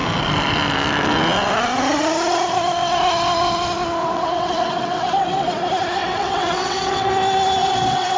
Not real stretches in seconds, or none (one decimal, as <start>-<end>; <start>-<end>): 4.0-5.6; 6.0-7.1; 7.6-8.2